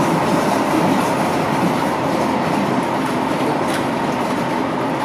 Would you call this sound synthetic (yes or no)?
no